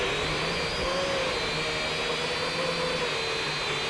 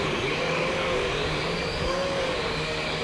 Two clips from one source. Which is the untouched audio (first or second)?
first